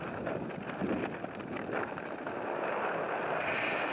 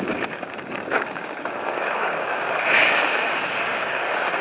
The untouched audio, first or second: first